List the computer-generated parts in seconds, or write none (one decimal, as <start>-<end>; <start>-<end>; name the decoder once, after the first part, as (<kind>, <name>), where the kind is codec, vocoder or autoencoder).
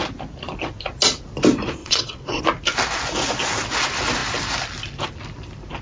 1.8-2.4 (vocoder, WaveNeXt)